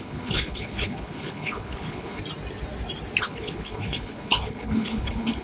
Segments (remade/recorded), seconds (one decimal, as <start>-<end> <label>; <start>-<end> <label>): 0.0-2.2 remade; 2.2-3.2 recorded; 3.2-5.4 remade